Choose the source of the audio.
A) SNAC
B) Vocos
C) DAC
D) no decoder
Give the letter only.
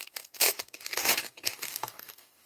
C